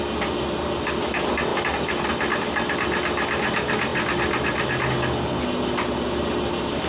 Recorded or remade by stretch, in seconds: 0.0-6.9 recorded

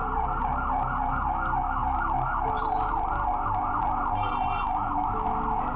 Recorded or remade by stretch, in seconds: 0.0-1.1 remade; 1.1-1.8 recorded; 1.8-5.3 remade; 5.3-5.8 recorded

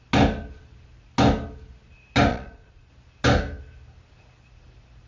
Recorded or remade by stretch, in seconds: 0.0-2.3 recorded; 2.3-2.9 remade; 2.9-5.1 recorded

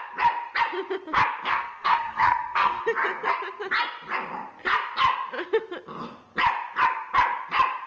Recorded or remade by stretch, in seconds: 0.0-1.5 recorded; 1.5-2.8 remade; 2.8-7.9 recorded